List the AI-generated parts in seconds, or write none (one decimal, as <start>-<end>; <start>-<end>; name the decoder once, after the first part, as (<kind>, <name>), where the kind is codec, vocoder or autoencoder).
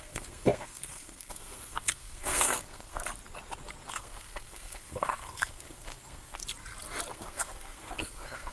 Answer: 0.0-3.0 (codec, SNAC); 3.9-6.4; 7.1-8.5